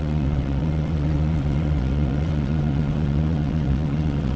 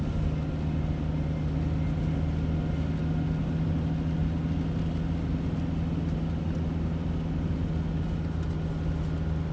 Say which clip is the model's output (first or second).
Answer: first